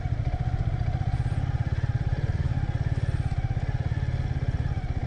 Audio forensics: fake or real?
real